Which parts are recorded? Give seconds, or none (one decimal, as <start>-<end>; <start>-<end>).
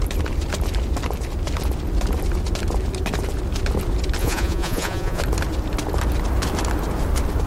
0.0-4.2; 5.2-7.5